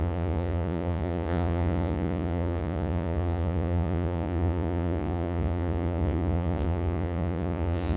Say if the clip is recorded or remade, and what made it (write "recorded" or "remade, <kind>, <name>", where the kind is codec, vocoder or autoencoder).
remade, vocoder, Vocos